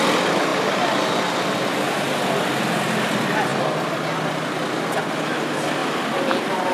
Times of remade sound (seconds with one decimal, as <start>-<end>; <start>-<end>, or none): none